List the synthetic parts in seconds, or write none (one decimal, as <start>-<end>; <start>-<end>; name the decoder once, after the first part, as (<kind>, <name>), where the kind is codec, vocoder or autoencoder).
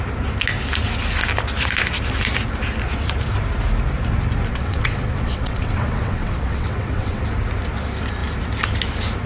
4.5-7.2 (vocoder, WaveNeXt)